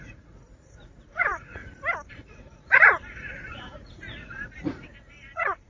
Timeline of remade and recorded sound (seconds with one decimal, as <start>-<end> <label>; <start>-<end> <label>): 0.0-1.6 remade; 1.6-2.1 recorded; 2.1-5.7 remade